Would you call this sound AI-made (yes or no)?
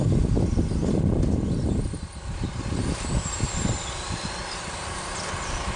yes